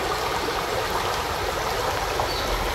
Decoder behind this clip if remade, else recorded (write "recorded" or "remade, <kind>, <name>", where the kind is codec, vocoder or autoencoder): recorded